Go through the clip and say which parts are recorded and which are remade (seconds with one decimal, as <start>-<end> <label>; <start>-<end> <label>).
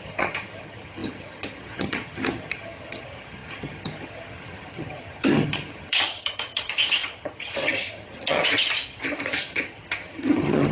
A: 0.0-10.7 remade